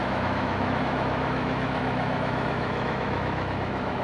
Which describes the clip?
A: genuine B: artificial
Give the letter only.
B